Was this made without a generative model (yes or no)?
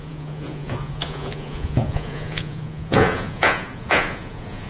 no